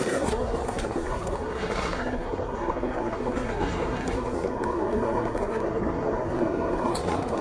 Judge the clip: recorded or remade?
remade